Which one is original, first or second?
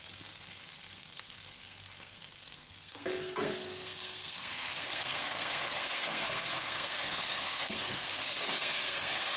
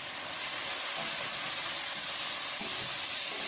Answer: second